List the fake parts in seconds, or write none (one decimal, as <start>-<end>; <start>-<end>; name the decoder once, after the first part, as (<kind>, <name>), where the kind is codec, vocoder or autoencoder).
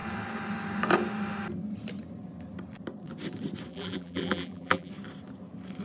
3.7-4.9 (vocoder, BigVGAN v2)